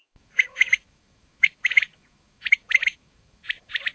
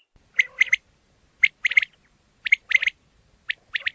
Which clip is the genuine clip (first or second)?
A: second